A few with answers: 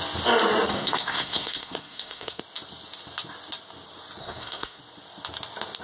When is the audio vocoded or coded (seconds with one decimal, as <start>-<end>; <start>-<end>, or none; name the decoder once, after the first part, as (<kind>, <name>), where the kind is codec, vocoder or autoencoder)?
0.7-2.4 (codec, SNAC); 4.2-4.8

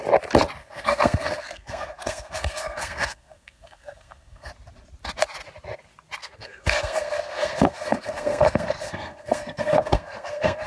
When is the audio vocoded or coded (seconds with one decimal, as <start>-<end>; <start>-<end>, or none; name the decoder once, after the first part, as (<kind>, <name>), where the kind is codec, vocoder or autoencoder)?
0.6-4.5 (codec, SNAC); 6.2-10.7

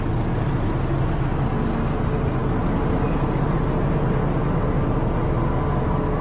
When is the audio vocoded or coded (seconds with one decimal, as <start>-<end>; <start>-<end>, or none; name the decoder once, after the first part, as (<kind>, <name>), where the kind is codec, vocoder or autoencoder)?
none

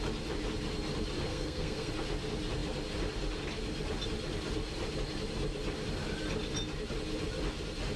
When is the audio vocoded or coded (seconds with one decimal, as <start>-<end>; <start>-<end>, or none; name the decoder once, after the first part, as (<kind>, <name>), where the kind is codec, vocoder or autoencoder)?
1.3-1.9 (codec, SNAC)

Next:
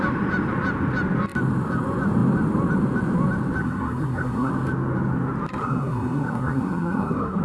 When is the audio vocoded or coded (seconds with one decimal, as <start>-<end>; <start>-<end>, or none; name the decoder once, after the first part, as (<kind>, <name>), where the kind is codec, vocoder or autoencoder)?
3.6-4.5 (codec, SNAC); 5.6-7.4